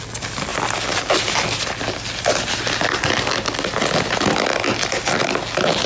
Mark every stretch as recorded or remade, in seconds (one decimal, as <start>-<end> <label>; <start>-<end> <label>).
0.0-5.9 recorded